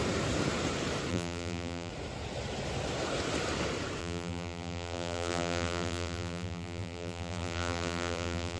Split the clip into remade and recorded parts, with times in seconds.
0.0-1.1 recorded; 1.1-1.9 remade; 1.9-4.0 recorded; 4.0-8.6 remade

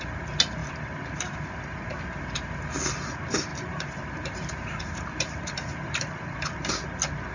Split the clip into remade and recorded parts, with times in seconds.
0.0-0.6 recorded; 0.6-2.0 remade; 2.0-3.5 recorded; 3.5-6.7 remade; 6.7-7.3 recorded

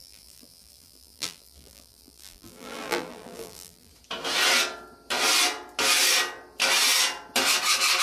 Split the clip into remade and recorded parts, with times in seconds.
0.0-3.9 remade; 3.9-8.0 recorded

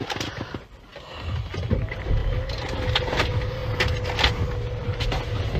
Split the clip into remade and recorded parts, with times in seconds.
0.0-0.9 remade; 0.9-1.7 recorded; 1.7-3.6 remade; 3.6-4.7 recorded; 4.7-5.6 remade